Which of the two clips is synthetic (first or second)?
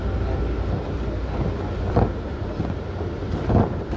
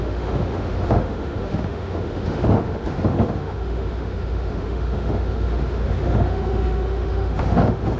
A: second